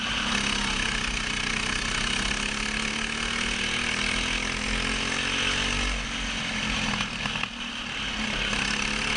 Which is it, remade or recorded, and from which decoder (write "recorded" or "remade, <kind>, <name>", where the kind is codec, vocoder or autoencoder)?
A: recorded